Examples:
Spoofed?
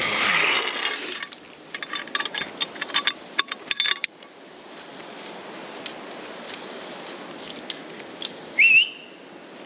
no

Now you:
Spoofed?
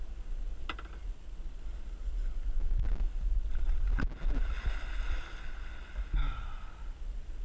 no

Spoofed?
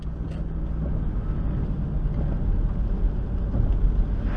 no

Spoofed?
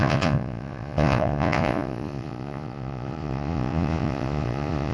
yes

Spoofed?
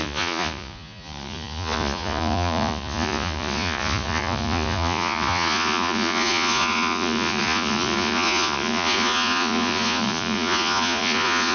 yes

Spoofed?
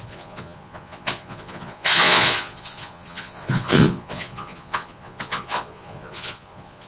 yes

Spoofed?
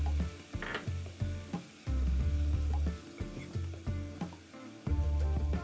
no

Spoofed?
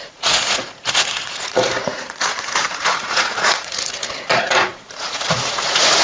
yes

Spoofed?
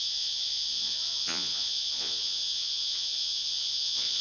yes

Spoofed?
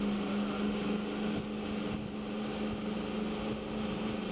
no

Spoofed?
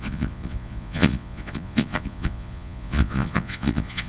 yes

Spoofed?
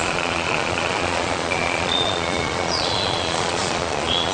yes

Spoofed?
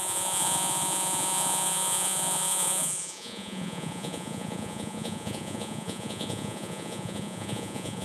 yes